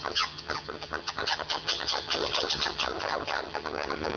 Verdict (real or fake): fake